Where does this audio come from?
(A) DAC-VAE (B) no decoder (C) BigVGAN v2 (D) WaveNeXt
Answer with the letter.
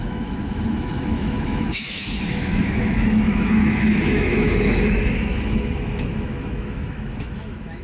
A